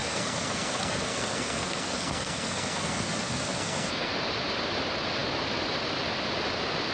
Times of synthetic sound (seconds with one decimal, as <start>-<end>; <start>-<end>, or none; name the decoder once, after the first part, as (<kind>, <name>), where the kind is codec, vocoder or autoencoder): 0.0-4.1 (codec, SNAC)